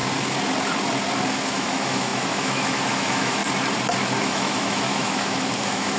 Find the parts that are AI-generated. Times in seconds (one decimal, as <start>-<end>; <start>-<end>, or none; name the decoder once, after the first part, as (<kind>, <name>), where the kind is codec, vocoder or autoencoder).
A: 1.5-3.4 (autoencoder, DAC-VAE); 4.2-6.0